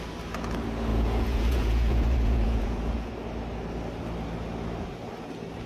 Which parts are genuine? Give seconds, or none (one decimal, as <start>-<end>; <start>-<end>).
0.0-0.9; 3.1-5.7